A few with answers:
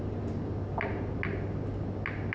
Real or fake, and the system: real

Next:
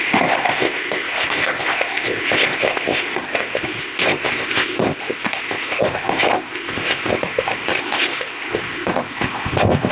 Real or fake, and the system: fake, codec, ZipCodec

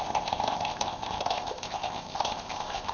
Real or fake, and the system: fake, codec, ZipCodec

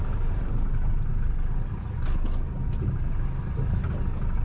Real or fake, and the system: real